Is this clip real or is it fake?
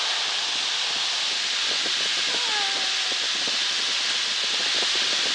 real